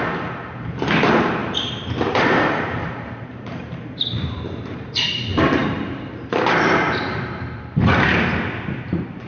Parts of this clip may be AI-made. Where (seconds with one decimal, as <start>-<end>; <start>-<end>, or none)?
0.0-8.3